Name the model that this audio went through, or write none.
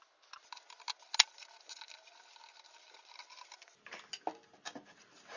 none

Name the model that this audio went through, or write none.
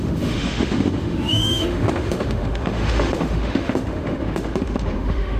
autoencoder, DAC-VAE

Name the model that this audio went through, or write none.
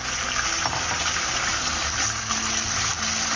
none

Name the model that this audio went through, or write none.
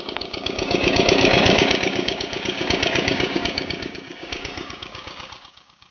codec, DAC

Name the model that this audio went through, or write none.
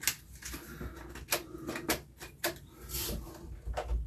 none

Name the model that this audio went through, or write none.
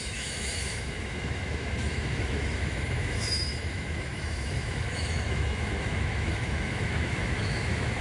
autoencoder, DAC-VAE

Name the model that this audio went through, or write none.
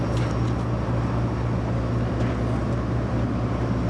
none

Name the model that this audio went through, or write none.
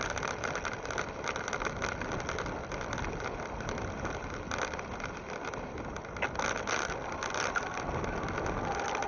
none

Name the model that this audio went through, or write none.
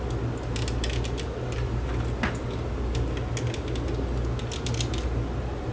none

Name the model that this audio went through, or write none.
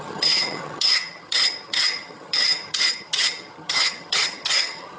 vocoder, HiFi-GAN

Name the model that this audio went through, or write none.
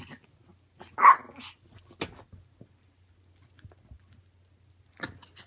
none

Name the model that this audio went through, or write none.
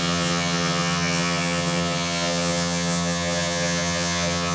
vocoder, HiFi-GAN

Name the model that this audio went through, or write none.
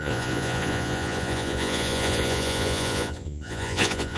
vocoder, Vocos